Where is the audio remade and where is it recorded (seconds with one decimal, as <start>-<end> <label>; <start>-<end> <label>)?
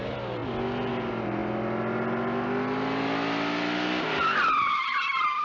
0.0-0.4 remade; 0.4-0.9 recorded; 0.9-1.4 remade; 1.4-4.6 recorded; 4.6-5.4 remade